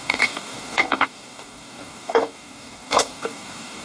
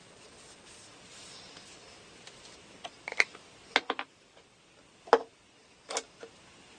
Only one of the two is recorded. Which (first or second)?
second